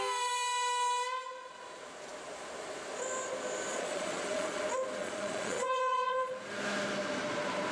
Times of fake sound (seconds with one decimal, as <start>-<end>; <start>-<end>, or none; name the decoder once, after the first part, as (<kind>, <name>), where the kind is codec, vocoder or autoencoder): 3.7-4.6 (vocoder, Vocos); 5.0-6.3